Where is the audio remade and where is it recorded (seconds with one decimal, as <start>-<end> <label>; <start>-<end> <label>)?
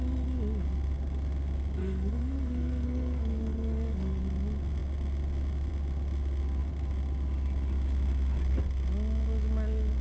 0.0-1.8 recorded; 1.8-4.2 remade; 4.2-10.0 recorded